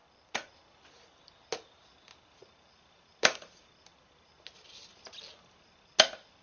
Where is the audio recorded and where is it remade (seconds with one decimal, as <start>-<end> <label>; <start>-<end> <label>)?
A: 0.0-2.4 recorded; 2.4-3.6 remade; 3.6-6.4 recorded